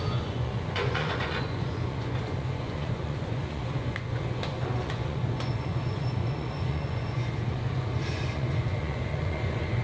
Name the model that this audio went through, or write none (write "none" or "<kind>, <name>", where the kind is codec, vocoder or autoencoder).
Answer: vocoder, Vocos